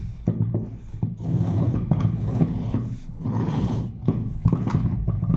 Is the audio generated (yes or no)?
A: yes